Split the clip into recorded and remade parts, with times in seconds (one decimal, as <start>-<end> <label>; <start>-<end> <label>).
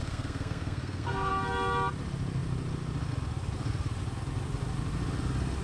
0.0-1.3 remade; 1.3-5.6 recorded